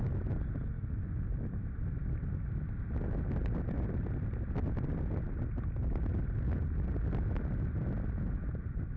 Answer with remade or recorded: recorded